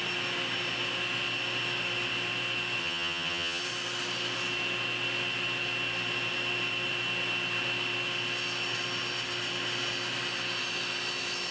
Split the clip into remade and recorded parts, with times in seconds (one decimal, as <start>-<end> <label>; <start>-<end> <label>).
0.0-2.8 recorded; 2.8-3.6 remade; 3.6-11.5 recorded